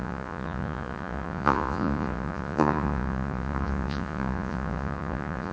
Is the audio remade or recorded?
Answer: remade